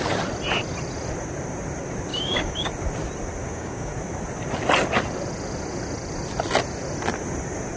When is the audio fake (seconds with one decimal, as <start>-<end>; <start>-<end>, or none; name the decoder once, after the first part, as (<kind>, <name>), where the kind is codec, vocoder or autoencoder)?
2.1-2.7 (codec, DAC); 3.4-3.9